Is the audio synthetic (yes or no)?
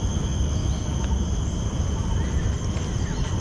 no